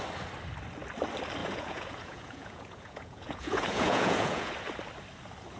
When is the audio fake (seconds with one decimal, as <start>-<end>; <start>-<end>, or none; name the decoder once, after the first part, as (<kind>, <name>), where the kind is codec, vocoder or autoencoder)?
1.4-4.5 (vocoder, Vocos)

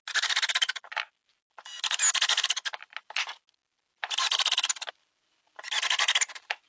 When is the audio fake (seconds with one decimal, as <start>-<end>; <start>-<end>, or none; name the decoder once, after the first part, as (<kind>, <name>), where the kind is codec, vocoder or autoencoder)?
none

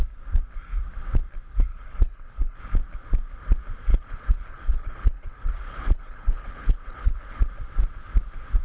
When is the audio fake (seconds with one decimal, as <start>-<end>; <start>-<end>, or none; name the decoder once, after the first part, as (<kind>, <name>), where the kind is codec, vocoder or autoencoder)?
1.7-2.6 (codec, HILCodec); 3.9-7.4

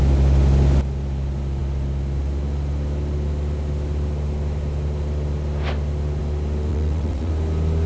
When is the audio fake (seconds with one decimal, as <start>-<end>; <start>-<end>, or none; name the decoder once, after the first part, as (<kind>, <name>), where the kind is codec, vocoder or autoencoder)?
6.7-7.3 (vocoder, WaveNeXt)

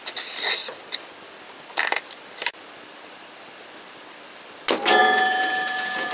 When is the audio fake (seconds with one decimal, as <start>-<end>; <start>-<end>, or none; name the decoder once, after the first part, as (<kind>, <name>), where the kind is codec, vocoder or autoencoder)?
5.0-6.1 (vocoder, Vocos)